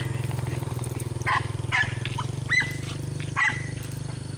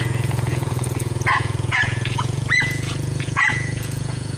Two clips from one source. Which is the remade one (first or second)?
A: second